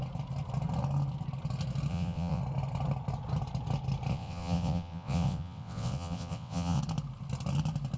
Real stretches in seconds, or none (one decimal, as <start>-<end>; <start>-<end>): 0.0-1.9; 2.4-4.1; 6.8-8.0